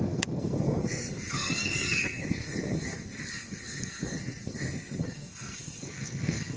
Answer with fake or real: fake